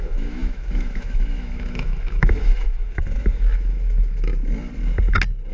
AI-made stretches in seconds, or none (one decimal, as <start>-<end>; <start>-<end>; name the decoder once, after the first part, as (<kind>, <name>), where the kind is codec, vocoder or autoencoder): 0.0-4.3 (autoencoder, DAC-VAE)